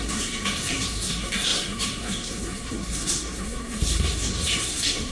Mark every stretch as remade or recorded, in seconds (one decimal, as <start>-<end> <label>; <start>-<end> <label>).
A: 0.0-5.1 remade